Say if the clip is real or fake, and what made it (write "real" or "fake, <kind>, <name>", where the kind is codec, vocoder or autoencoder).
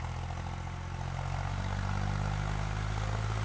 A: real